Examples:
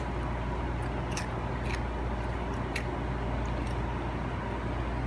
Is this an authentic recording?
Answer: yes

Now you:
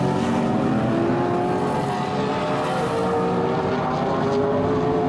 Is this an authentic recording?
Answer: yes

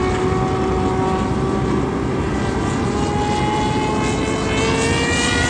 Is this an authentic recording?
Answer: yes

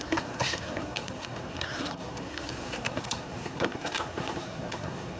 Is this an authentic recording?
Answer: no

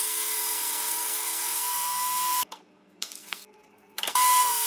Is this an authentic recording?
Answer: no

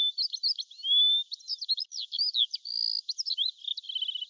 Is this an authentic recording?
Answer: yes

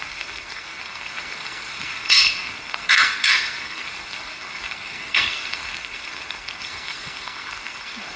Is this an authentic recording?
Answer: no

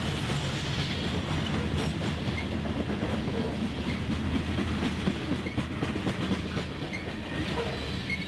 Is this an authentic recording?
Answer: yes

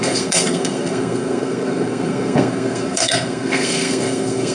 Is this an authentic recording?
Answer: no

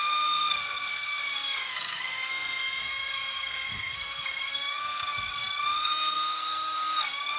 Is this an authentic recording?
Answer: no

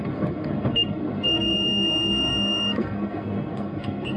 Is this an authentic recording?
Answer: no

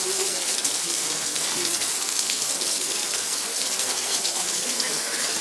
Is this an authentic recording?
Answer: no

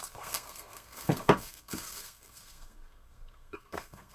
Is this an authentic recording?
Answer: no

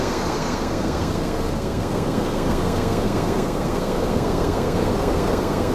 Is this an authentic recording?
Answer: no